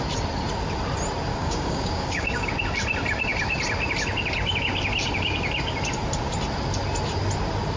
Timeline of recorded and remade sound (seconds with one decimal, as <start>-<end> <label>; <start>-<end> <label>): 0.0-1.3 recorded; 1.3-2.5 remade; 2.5-7.8 recorded